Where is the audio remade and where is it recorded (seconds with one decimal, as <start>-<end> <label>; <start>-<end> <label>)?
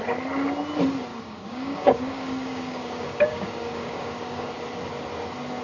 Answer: 0.0-1.1 recorded; 1.1-4.5 remade; 4.5-5.6 recorded